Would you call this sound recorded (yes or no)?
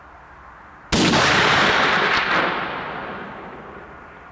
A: yes